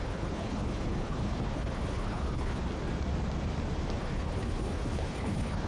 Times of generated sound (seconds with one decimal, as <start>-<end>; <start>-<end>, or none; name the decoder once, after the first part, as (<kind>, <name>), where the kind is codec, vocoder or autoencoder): 0.0-2.6 (codec, HILCodec); 4.0-5.7